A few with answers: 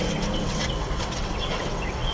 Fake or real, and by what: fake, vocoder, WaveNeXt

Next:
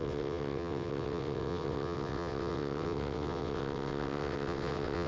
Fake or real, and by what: fake, vocoder, WaveNeXt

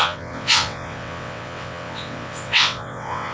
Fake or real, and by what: fake, vocoder, WaveNeXt